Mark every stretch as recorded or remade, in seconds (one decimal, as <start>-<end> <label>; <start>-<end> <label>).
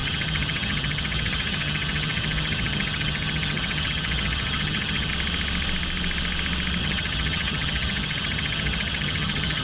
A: 0.0-5.1 remade; 5.1-6.8 recorded; 6.8-9.6 remade